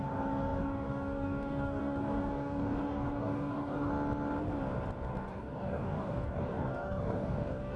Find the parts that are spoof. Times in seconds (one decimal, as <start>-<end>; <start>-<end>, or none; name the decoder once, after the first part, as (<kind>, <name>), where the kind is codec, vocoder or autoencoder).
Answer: 0.0-3.9 (codec, DAC); 5.1-7.8